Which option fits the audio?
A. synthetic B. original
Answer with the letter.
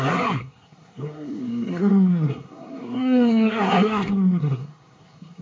A